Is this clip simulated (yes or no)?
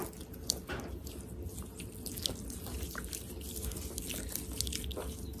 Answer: no